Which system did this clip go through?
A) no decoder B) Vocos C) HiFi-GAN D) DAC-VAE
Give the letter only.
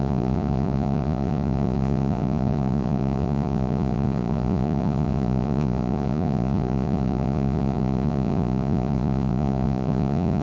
B